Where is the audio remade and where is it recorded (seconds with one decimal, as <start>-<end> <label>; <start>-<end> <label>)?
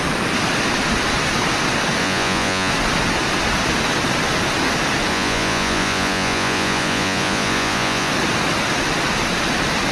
0.0-2.0 recorded; 2.0-2.7 remade; 2.7-5.1 recorded; 5.1-8.1 remade; 8.1-9.9 recorded